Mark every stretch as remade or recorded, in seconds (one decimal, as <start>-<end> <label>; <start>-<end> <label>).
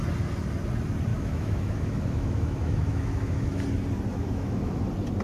0.0-1.1 recorded; 1.1-3.6 remade; 3.6-4.1 recorded; 4.1-4.8 remade; 4.8-5.2 recorded